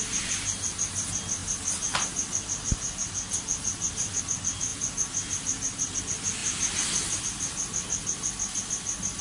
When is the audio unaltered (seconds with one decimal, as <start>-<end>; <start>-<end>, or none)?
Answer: 0.0-9.2